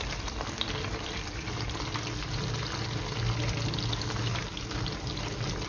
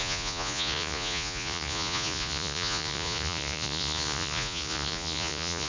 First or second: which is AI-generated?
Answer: second